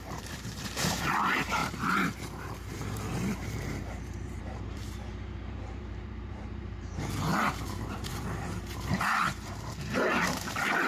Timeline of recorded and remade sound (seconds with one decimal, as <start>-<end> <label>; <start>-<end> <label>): 0.0-10.9 remade